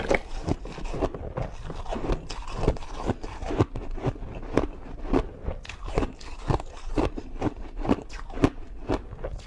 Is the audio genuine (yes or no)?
yes